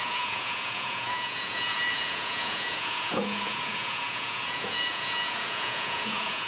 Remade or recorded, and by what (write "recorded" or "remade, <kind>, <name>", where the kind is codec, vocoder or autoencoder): remade, vocoder, Vocos